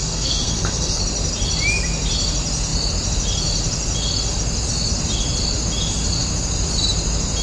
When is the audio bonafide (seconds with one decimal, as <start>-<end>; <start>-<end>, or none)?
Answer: 1.0-7.4